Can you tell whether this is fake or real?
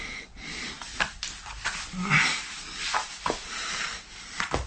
real